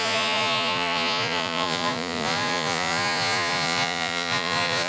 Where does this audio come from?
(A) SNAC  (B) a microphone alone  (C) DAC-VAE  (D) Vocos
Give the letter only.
D